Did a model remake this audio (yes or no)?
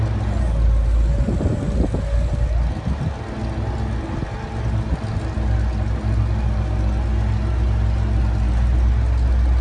no